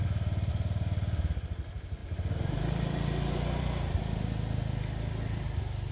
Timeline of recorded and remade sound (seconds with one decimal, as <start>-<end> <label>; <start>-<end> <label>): 0.0-2.0 recorded; 2.0-4.2 remade; 4.2-5.9 recorded